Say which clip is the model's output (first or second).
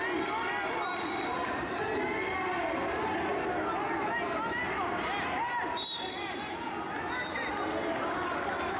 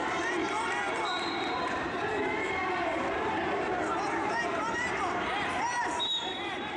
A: second